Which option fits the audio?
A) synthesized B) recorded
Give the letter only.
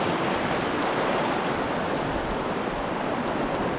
B